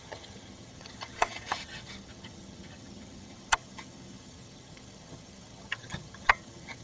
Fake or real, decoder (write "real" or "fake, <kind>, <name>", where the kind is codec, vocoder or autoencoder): fake, vocoder, HiFi-GAN